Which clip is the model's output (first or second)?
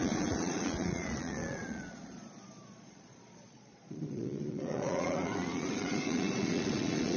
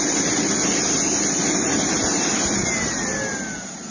first